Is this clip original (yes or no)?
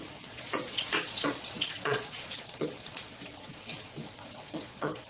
no